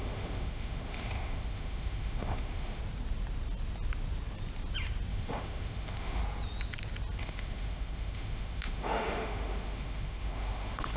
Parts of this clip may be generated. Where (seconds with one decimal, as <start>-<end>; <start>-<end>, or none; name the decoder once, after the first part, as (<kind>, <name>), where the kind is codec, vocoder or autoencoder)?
0.0-2.8 (autoencoder, DAC-VAE); 5.1-6.2; 7.2-11.0